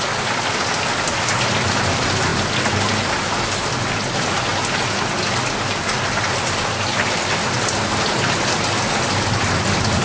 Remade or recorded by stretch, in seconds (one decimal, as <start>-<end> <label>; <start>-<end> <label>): 0.0-10.0 recorded